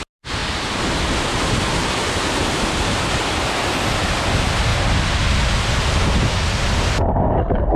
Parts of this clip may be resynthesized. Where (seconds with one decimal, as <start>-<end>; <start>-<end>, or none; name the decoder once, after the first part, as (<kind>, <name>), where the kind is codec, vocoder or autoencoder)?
none